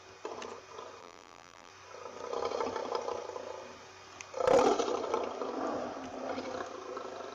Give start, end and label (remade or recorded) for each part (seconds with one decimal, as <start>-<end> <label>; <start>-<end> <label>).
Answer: 0.0-1.0 recorded; 1.0-1.7 remade; 1.7-7.3 recorded